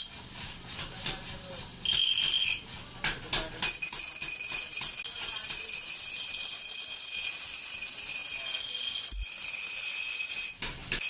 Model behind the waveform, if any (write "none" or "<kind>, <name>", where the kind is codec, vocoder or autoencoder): none